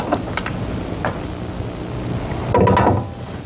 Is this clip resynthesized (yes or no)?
no